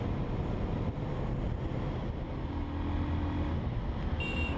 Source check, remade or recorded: recorded